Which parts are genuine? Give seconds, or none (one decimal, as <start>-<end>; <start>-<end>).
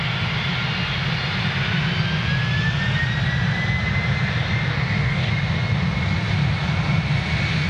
0.0-4.7; 5.3-7.7